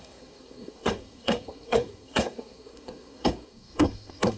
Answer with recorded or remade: remade